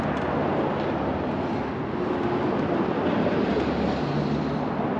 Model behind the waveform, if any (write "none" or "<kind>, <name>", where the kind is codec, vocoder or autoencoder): none